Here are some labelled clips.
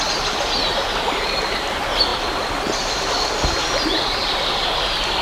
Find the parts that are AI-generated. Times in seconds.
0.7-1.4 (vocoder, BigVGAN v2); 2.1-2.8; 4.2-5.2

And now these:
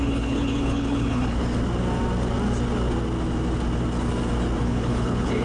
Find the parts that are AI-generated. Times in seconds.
0.0-1.4 (codec, HILCodec); 4.6-5.4

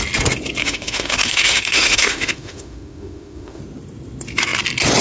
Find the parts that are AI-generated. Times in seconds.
0.6-3.6 (autoencoder, DAC-VAE)

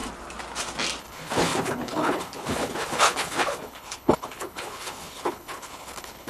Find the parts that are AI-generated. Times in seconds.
1.0-6.3 (codec, HILCodec)

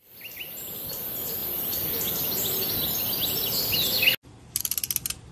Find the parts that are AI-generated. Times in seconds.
none

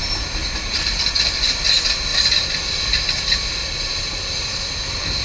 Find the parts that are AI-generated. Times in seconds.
2.1-5.2 (vocoder, BigVGAN v2)

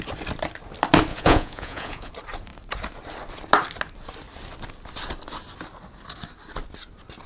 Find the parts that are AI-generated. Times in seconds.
1.1-2.1 (vocoder, Vocos)

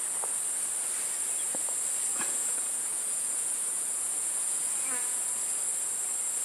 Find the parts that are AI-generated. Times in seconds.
2.1-5.4 (vocoder, Vocos)